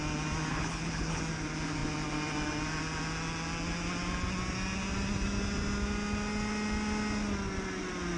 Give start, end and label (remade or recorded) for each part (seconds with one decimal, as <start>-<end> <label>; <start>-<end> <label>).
0.0-0.5 recorded; 0.5-1.2 remade; 1.2-8.2 recorded